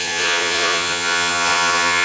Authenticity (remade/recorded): remade